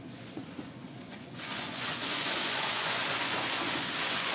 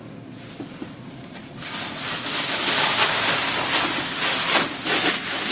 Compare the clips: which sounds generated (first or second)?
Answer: first